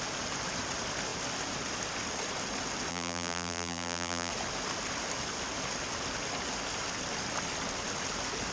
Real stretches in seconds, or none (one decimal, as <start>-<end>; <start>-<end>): 0.0-2.9; 4.3-8.5